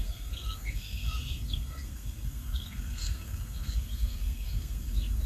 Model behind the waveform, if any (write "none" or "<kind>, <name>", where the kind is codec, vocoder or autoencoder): codec, SNAC